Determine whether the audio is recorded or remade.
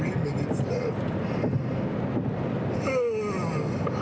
recorded